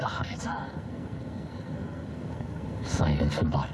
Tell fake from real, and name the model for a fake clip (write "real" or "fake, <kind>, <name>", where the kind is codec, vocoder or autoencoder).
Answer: fake, codec, SNAC